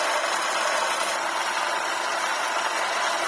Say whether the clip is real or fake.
real